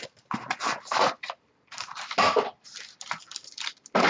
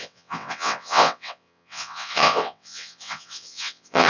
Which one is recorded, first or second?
first